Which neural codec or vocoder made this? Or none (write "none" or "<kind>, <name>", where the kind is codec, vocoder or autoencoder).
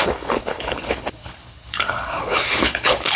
codec, HILCodec